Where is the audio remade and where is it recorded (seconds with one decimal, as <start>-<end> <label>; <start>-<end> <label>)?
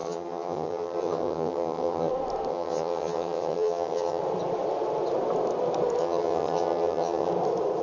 0.0-2.1 remade; 2.1-2.5 recorded; 2.5-4.2 remade; 4.2-6.0 recorded; 6.0-7.3 remade; 7.3-7.8 recorded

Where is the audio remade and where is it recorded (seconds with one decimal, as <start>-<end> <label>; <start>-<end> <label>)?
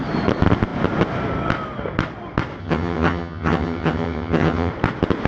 0.0-2.6 recorded; 2.6-4.7 remade; 4.7-5.3 recorded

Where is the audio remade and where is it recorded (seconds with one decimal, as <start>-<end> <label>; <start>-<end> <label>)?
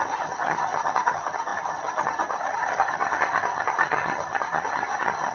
0.0-5.3 remade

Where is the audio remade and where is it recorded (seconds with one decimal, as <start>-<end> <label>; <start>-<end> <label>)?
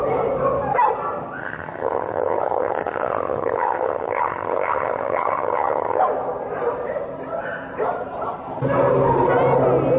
0.0-1.4 recorded; 1.4-6.0 remade; 6.0-10.0 recorded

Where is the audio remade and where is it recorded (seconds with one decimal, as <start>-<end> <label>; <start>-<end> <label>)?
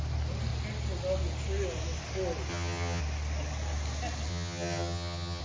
0.0-2.5 recorded; 2.5-3.0 remade; 3.0-4.3 recorded; 4.3-5.4 remade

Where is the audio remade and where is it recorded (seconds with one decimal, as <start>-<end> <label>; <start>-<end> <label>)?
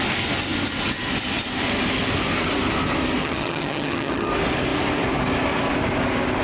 0.0-3.2 recorded; 3.2-4.3 remade; 4.3-6.4 recorded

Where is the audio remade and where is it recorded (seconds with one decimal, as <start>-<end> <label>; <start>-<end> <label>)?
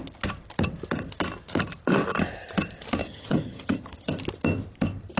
0.0-3.0 recorded; 3.0-4.1 remade; 4.1-5.2 recorded